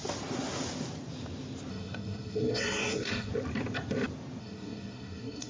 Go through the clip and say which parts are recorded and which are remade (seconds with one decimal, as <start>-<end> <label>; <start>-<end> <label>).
0.0-1.7 recorded; 1.7-3.3 remade; 3.3-4.4 recorded; 4.4-5.5 remade